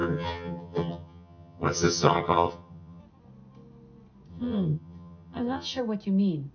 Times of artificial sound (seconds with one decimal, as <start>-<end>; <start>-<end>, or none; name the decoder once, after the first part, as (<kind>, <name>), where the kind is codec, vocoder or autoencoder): 0.0-3.0 (vocoder, HiFi-GAN); 4.3-5.8